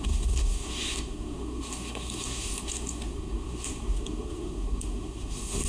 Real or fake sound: fake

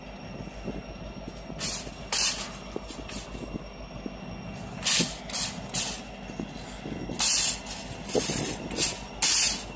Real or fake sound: real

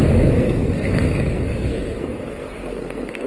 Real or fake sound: fake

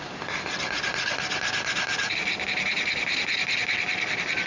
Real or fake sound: real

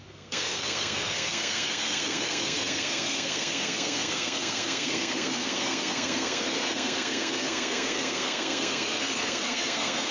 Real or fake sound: fake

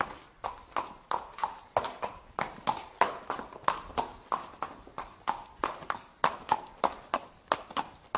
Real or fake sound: real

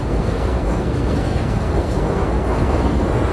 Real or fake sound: fake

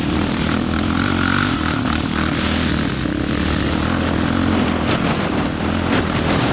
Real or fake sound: real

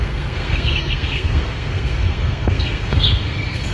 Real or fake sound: fake